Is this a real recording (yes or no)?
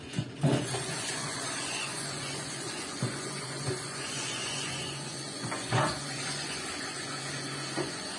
no